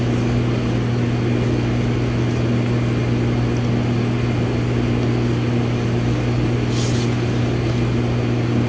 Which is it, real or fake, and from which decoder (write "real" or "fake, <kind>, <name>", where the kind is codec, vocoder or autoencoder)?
real